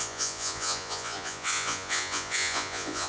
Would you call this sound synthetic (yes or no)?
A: yes